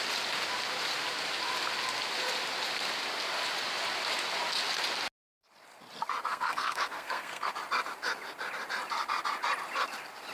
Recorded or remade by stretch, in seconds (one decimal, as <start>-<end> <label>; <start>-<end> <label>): 0.0-6.3 recorded; 6.3-7.5 remade; 7.5-10.3 recorded